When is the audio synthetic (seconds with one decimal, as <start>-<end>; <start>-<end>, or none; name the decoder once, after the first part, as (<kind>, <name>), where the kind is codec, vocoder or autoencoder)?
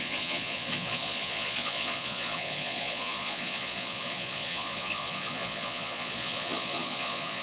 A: 0.0-7.4 (vocoder, Vocos)